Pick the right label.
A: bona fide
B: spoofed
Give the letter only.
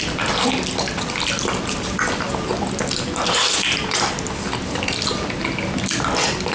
A